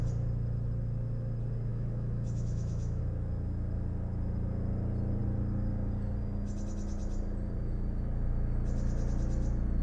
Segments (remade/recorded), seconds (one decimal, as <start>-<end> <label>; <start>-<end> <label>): 0.0-1.7 recorded; 1.7-3.0 remade; 3.0-9.8 recorded